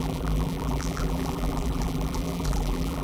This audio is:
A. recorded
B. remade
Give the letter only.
B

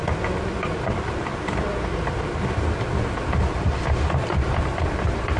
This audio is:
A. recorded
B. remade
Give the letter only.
A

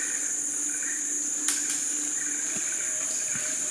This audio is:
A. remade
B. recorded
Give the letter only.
B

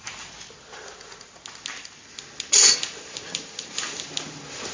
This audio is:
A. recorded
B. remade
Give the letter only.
A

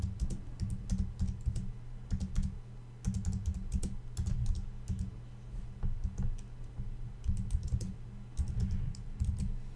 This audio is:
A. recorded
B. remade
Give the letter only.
A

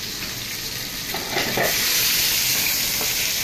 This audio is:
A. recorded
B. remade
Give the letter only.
A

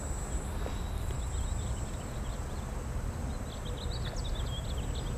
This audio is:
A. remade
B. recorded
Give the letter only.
B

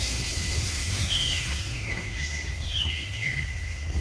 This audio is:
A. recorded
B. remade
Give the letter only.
B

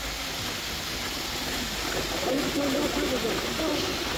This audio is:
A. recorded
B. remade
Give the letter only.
A